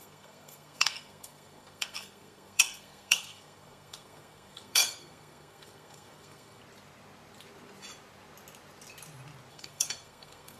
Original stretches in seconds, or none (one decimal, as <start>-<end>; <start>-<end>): 6.6-9.5